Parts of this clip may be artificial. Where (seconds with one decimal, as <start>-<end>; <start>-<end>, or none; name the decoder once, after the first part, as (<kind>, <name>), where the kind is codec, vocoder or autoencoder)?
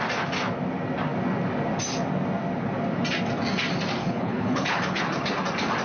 4.0-5.0 (codec, HILCodec)